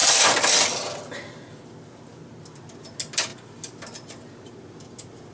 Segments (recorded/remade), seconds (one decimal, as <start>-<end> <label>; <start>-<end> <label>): 0.0-5.3 recorded